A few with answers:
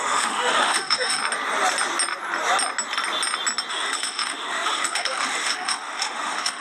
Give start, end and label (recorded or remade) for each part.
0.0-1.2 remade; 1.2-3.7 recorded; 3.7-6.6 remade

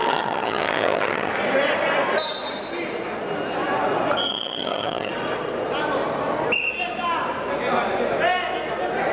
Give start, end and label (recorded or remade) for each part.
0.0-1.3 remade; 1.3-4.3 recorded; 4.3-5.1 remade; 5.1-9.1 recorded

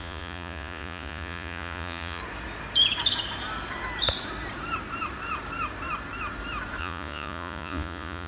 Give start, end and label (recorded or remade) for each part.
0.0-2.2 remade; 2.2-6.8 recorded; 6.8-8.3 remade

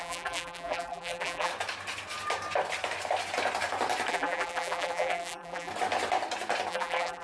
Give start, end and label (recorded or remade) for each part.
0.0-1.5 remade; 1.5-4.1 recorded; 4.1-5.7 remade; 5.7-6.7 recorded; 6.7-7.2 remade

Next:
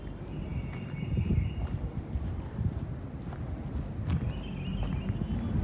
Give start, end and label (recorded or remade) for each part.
0.0-5.6 recorded

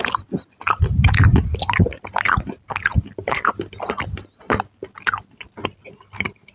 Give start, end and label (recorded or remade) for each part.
0.0-6.5 recorded

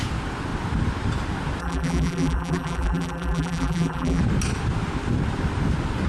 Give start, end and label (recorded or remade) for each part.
0.0-1.6 recorded; 1.6-4.2 remade; 4.2-6.1 recorded